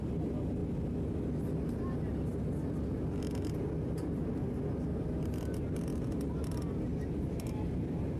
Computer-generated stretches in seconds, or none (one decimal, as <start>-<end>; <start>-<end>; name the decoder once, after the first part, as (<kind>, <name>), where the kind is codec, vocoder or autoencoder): none